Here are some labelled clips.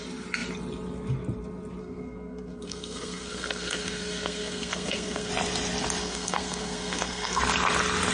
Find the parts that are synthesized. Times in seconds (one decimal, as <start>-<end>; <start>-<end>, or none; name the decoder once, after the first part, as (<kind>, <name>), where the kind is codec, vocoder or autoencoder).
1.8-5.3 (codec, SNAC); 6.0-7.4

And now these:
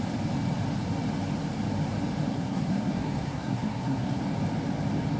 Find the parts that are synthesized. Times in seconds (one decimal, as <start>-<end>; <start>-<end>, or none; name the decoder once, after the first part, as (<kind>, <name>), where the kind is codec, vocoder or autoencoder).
2.3-4.2 (codec, SNAC)

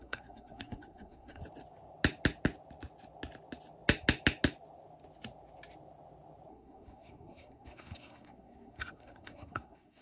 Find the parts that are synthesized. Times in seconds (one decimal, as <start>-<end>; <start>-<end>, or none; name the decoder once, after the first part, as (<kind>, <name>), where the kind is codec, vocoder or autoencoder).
0.0-1.4 (codec, SNAC); 6.5-10.0

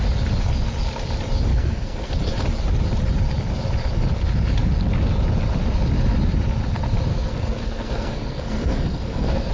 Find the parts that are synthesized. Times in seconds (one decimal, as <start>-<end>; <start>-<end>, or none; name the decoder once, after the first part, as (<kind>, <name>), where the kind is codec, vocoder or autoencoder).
1.5-2.1 (codec, SNAC); 7.1-9.5